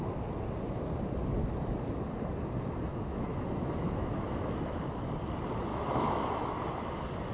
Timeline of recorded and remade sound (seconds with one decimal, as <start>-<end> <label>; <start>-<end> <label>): 0.0-2.9 recorded; 2.9-5.1 remade; 5.1-5.7 recorded; 5.7-6.3 remade; 6.3-7.3 recorded